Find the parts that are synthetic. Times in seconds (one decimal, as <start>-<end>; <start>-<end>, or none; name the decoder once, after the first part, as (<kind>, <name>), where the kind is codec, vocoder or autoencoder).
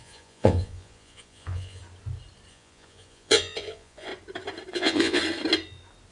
0.0-1.8 (vocoder, Vocos); 2.5-4.1; 4.7-5.2